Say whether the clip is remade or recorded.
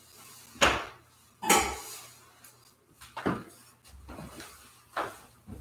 recorded